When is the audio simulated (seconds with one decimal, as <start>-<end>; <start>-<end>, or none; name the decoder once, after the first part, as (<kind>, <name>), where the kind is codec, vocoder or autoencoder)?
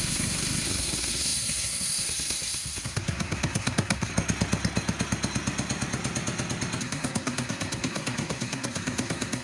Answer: 0.0-4.1 (codec, SNAC); 6.8-9.4